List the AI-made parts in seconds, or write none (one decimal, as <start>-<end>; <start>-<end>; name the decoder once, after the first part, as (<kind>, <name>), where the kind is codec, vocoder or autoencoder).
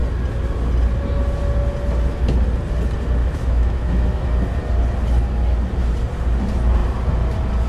3.2-4.3 (autoencoder, DAC-VAE)